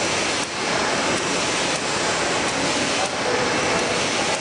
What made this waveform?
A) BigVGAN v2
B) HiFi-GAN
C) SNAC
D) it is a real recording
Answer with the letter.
D